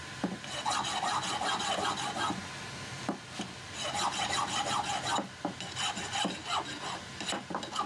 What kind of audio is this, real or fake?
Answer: real